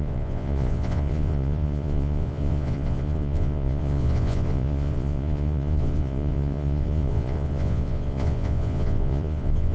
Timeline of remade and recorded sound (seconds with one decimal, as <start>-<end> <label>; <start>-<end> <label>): 0.0-9.7 remade